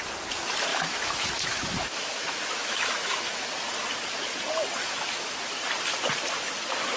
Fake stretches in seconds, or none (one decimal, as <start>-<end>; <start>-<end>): 0.7-3.5; 4.8-5.3